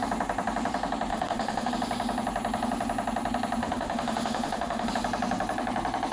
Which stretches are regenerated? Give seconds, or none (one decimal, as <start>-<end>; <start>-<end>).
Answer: 1.1-1.7; 3.6-4.9